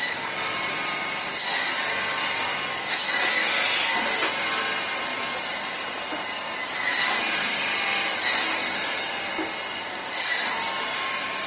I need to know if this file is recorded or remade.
recorded